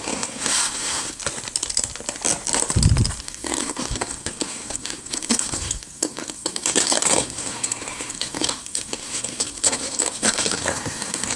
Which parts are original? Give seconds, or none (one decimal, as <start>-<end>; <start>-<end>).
1.2-3.2